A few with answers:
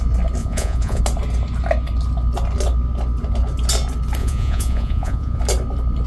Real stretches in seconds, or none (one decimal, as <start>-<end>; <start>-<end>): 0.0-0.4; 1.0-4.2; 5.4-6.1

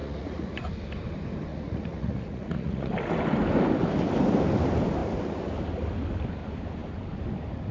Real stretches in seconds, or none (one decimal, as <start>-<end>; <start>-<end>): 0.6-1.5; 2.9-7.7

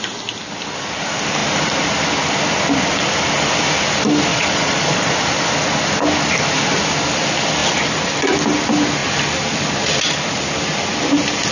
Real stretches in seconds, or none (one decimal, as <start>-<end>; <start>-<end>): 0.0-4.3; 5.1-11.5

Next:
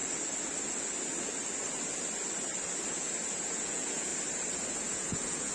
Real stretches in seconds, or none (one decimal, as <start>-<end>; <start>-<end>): 0.0-3.3; 4.1-4.9